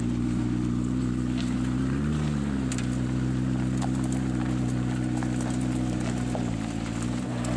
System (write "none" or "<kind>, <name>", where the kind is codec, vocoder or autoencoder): none